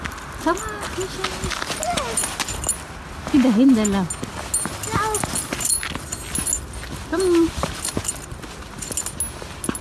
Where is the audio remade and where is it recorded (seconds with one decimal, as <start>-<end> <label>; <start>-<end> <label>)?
0.0-9.8 recorded